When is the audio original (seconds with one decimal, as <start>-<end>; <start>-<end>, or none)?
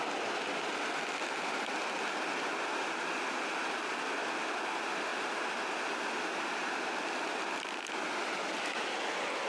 0.0-9.5